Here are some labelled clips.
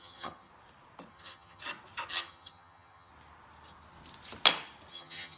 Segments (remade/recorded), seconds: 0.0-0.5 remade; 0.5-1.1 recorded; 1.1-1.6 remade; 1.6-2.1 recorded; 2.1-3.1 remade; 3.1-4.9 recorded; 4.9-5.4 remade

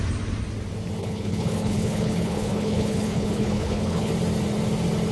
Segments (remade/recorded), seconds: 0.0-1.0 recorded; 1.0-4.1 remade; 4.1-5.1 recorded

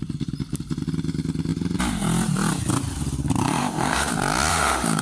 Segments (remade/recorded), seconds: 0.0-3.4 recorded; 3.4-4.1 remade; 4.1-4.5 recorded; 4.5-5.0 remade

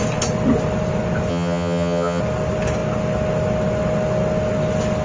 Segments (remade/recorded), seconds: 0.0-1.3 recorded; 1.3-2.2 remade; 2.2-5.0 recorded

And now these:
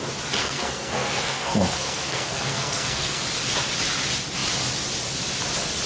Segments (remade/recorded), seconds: 0.0-0.4 recorded; 0.4-3.2 remade; 3.2-5.9 recorded